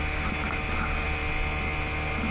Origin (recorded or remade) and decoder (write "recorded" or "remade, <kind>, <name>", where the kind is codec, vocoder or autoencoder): recorded